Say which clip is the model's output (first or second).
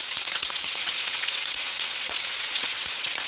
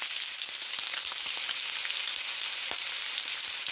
first